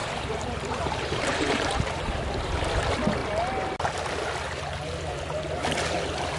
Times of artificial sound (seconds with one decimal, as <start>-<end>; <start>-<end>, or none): 0.0-2.2